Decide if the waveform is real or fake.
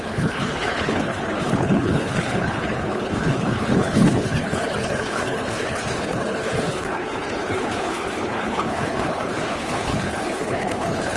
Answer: fake